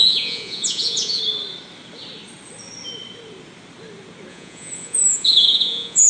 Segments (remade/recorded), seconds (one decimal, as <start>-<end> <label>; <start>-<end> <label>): 0.0-1.2 remade; 1.2-4.3 recorded; 4.3-6.1 remade